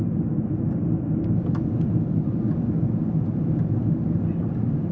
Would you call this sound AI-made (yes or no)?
no